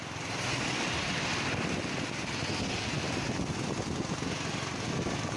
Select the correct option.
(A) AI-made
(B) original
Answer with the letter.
B